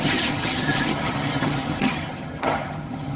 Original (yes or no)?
no